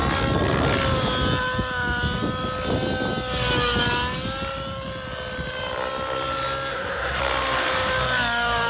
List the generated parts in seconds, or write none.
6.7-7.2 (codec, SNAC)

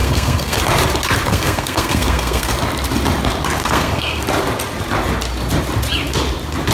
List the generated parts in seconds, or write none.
0.0-0.6 (codec, SNAC); 1.3-2.5; 3.6-4.2

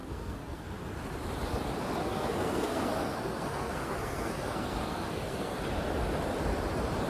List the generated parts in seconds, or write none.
0.0-0.7 (codec, SNAC); 2.0-5.6